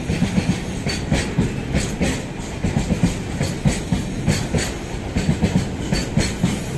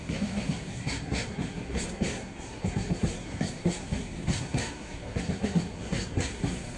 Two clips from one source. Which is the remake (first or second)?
second